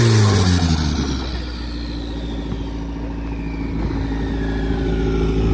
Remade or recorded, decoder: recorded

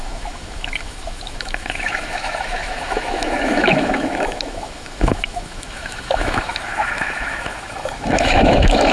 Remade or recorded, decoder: remade, autoencoder, DAC-VAE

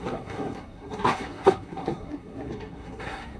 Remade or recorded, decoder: remade, codec, SNAC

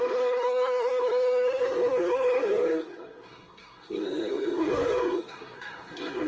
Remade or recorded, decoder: remade, codec, SNAC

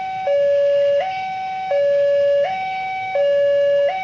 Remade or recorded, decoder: remade, autoencoder, DAC-VAE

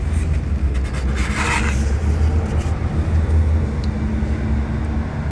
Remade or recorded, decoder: recorded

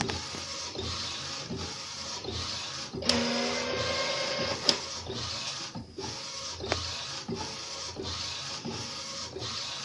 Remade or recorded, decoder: recorded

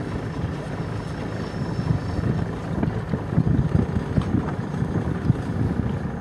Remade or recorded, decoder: recorded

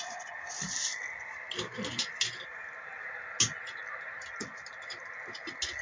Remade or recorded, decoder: recorded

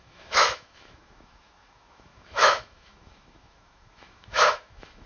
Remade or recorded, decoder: remade, autoencoder, DAC-VAE